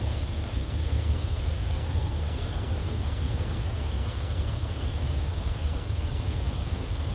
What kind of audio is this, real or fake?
fake